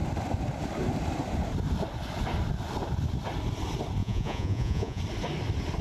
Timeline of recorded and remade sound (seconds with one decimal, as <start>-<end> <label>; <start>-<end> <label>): 0.0-4.0 recorded; 4.0-5.0 remade; 5.0-5.8 recorded